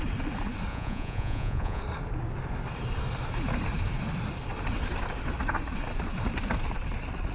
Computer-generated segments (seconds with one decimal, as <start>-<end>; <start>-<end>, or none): 0.7-1.8